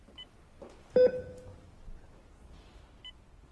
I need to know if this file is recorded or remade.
recorded